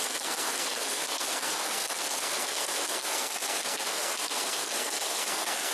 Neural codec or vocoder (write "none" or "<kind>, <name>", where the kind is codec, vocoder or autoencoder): codec, SNAC